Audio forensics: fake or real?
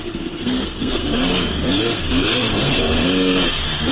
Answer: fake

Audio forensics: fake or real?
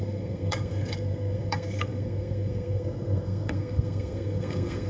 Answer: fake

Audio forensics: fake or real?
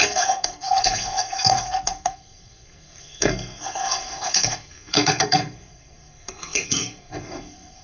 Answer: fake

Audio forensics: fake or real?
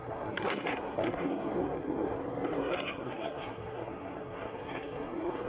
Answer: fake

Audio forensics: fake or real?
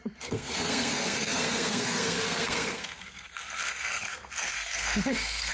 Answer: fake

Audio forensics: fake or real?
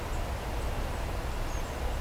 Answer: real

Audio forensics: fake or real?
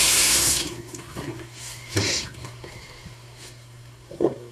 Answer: fake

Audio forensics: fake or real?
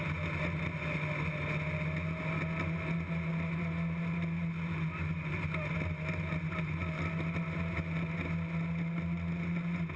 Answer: real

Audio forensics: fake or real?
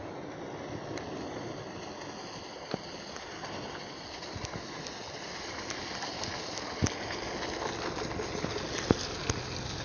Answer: real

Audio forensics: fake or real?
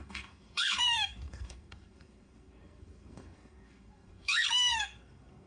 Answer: fake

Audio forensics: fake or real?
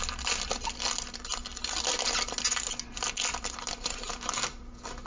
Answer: real